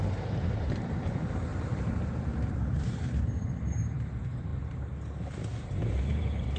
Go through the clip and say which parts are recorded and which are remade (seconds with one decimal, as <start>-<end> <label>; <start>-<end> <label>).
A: 0.0-1.5 remade; 1.5-2.7 recorded; 2.7-4.5 remade; 4.5-5.6 recorded; 5.6-6.6 remade